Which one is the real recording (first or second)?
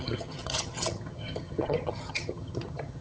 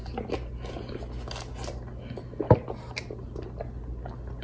second